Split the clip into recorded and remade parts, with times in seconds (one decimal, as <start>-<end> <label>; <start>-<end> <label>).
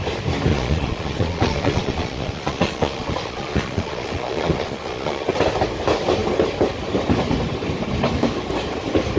0.0-0.5 recorded; 0.5-5.3 remade; 5.3-9.2 recorded